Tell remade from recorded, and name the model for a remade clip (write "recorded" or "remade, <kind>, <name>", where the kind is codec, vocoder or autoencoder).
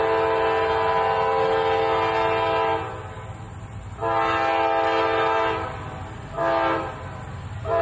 recorded